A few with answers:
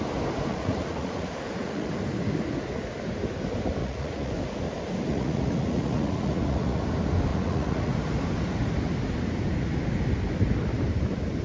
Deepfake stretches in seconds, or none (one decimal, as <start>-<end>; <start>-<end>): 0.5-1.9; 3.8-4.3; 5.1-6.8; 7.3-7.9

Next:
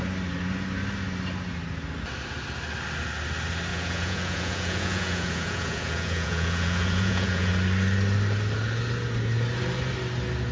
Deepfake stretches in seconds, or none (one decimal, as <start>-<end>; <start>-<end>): 3.7-7.5

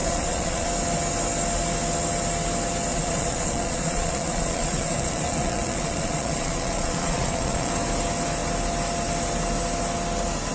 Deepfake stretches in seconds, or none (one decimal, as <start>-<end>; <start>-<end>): 0.0-0.7; 2.9-7.7

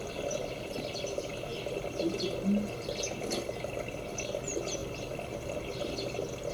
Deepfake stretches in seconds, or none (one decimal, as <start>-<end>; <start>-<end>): none